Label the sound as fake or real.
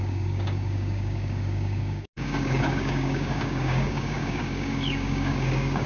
fake